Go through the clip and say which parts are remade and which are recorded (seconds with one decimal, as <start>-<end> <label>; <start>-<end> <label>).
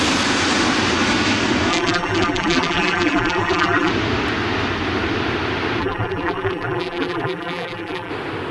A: 0.0-1.7 recorded; 1.7-3.9 remade; 3.9-5.8 recorded; 5.8-8.1 remade; 8.1-8.5 recorded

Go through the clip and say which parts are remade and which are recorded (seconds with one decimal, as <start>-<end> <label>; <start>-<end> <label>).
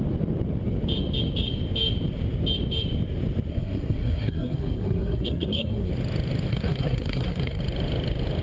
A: 0.0-3.5 recorded; 3.5-5.9 remade; 5.9-6.5 recorded; 6.5-7.6 remade; 7.6-8.4 recorded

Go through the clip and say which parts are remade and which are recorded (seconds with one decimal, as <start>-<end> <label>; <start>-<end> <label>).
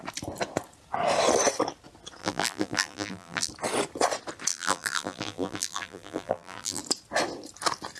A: 0.0-2.2 recorded; 2.2-3.5 remade; 3.5-4.5 recorded; 4.5-6.8 remade; 6.8-8.0 recorded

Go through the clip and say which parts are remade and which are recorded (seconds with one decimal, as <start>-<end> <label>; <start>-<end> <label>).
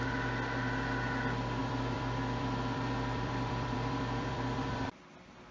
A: 0.0-1.6 recorded; 1.6-4.9 remade; 4.9-5.5 recorded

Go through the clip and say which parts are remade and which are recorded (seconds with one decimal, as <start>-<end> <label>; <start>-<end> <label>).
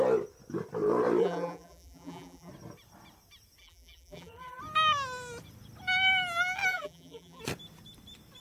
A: 0.0-1.2 recorded; 1.2-2.5 remade; 2.5-3.6 recorded; 3.6-4.6 remade; 4.6-6.7 recorded; 6.7-7.4 remade; 7.4-8.4 recorded